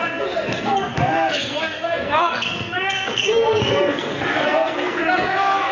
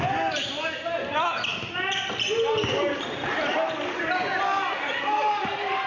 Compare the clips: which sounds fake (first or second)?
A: first